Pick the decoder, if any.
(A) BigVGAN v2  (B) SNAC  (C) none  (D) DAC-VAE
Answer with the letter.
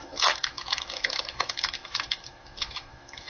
D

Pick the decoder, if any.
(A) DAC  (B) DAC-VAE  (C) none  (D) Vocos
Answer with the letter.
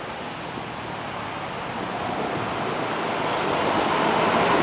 C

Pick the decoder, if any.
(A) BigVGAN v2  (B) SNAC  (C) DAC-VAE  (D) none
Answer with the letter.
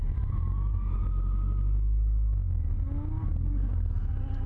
D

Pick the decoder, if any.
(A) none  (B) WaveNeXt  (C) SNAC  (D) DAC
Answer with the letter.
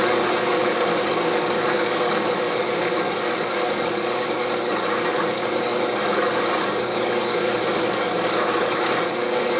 D